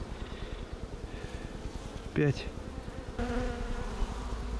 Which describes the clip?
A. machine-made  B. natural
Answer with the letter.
B